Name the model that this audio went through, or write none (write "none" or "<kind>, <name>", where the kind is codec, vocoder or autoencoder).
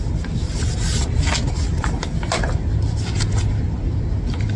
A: none